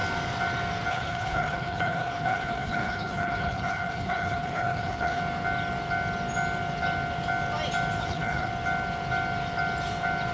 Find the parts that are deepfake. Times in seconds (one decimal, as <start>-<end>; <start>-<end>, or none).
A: 0.9-5.2; 8.0-8.5